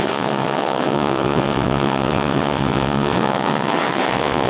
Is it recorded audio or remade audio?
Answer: remade